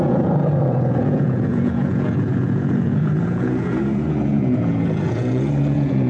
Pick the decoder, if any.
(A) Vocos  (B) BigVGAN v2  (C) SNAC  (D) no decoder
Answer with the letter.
A